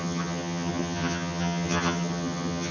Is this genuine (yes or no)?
no